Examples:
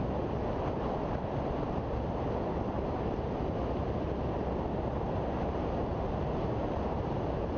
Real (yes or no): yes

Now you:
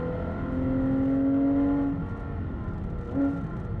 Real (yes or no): yes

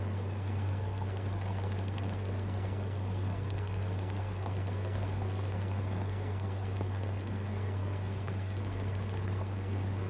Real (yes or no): no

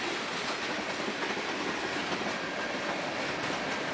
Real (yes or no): yes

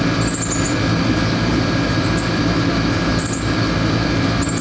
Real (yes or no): yes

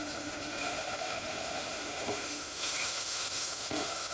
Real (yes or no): no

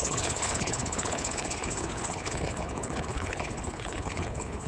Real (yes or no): no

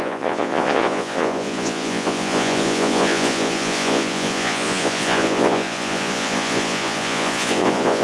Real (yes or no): no